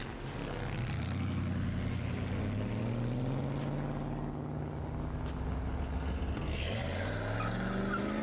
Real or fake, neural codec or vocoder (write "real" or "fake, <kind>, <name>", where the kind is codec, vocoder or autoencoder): real